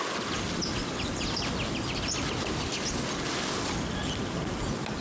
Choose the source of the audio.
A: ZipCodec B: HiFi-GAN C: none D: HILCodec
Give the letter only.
C